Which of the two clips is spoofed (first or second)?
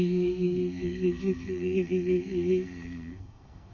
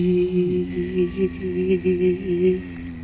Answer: first